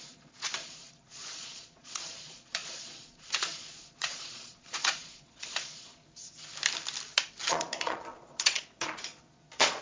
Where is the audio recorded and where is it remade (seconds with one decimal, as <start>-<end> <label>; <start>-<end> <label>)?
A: 0.0-6.0 remade; 6.0-7.5 recorded; 7.5-9.8 remade